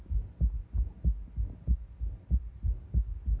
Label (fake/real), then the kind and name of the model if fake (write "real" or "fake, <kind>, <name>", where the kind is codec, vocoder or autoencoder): real